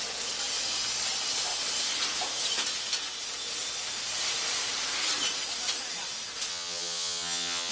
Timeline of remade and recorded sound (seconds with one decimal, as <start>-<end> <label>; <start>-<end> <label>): 0.0-6.5 recorded; 6.5-7.7 remade